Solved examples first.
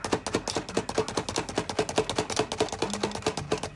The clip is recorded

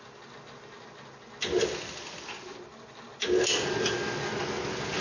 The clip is recorded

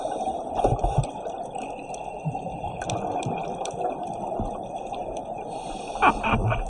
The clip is remade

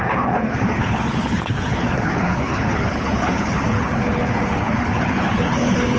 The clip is remade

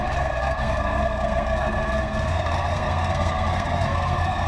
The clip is remade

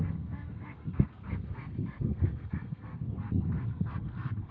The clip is remade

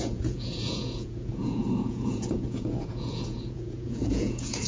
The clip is remade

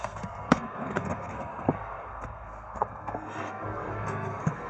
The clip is remade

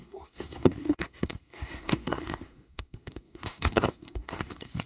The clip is remade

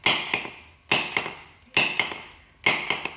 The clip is recorded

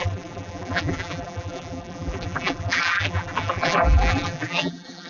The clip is remade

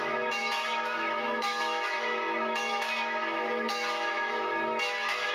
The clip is remade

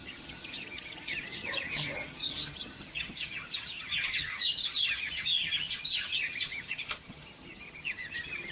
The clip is remade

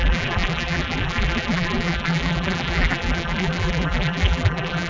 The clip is remade